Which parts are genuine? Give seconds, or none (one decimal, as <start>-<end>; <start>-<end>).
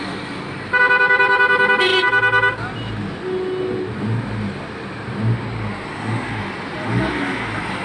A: 0.0-7.8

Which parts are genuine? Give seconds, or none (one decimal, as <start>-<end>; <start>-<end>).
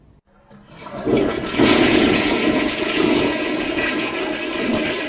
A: 0.0-1.1; 4.2-5.1